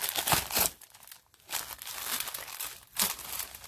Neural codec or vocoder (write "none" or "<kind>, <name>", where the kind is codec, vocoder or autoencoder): none